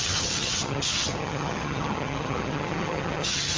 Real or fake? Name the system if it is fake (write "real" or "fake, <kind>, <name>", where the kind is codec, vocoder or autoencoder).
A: fake, vocoder, HiFi-GAN